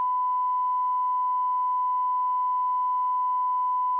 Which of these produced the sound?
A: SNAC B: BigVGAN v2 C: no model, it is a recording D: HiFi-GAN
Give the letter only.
C